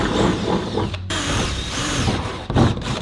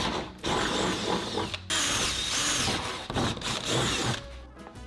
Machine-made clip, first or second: first